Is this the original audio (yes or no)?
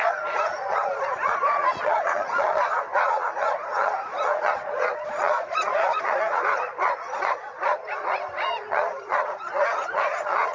no